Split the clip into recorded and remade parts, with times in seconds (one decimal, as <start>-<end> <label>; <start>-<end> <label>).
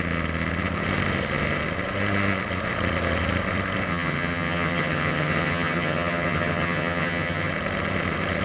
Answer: 0.0-3.9 recorded; 3.9-7.5 remade; 7.5-8.4 recorded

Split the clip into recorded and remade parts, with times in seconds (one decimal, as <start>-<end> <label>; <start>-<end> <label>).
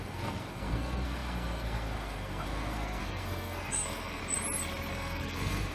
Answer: 0.0-4.2 remade; 4.2-4.9 recorded; 4.9-5.7 remade